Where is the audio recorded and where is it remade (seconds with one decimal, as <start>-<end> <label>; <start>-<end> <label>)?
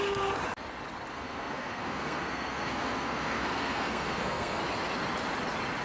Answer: 0.0-1.1 recorded; 1.1-4.6 remade; 4.6-5.8 recorded